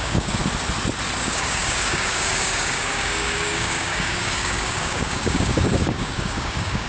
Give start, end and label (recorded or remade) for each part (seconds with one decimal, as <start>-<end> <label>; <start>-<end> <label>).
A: 0.0-0.4 remade; 0.4-1.2 recorded; 1.2-6.9 remade